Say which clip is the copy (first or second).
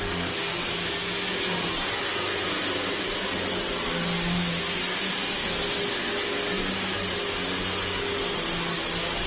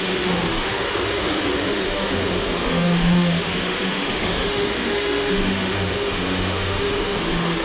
second